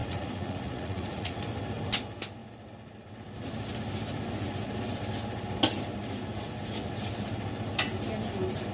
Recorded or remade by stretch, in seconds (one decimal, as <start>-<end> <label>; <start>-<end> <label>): 0.0-1.4 remade; 1.4-8.7 recorded